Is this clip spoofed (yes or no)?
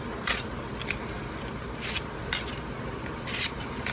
no